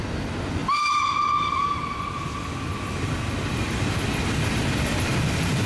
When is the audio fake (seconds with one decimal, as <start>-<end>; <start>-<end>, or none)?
none